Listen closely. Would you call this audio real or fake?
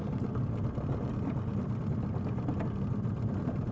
real